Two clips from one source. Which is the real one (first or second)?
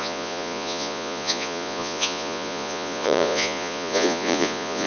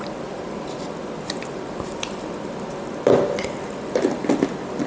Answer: second